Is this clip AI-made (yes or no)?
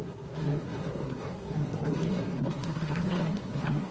yes